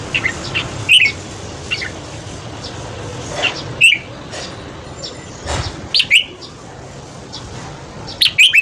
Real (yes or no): yes